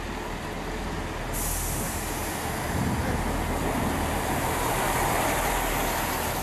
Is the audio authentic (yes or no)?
yes